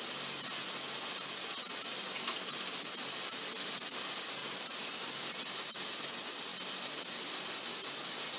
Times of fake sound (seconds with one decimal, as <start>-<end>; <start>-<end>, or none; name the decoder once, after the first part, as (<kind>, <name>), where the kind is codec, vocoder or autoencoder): 4.4-5.1 (vocoder, BigVGAN v2)